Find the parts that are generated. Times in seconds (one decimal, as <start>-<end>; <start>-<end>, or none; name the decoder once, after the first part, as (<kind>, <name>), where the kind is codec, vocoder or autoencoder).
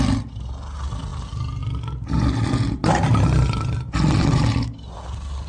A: none